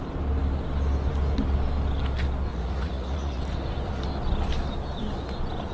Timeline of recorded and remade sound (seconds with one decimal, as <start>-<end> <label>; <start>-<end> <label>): 0.0-2.5 recorded; 2.5-3.4 remade; 3.4-5.7 recorded